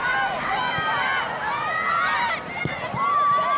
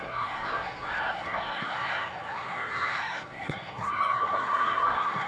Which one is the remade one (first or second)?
second